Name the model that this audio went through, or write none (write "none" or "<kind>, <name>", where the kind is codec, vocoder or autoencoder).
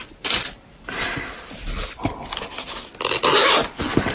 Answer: none